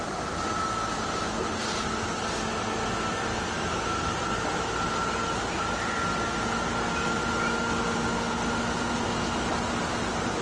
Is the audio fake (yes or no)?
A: no